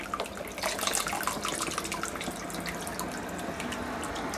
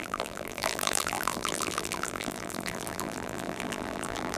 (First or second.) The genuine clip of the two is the first